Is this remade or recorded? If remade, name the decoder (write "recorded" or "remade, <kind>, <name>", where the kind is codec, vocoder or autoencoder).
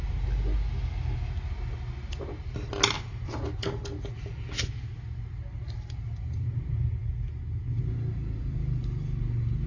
recorded